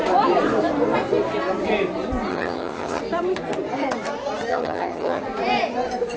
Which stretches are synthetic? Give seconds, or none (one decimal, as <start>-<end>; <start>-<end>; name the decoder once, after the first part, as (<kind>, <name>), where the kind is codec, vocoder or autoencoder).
2.3-3.0 (vocoder, HiFi-GAN); 4.5-5.2